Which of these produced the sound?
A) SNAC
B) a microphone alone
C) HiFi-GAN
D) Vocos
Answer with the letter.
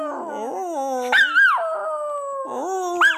B